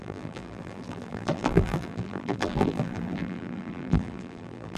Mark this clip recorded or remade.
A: remade